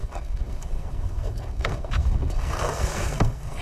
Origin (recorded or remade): remade